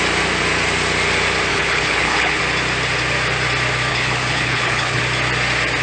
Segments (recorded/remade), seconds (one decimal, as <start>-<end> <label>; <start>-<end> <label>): 0.0-1.5 recorded; 1.5-2.4 remade; 2.4-3.9 recorded; 3.9-5.0 remade; 5.0-5.8 recorded